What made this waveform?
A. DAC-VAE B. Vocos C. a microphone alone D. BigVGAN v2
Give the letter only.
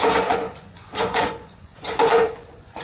B